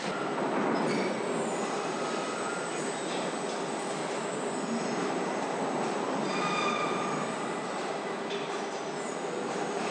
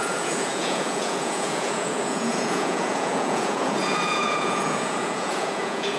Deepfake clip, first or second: second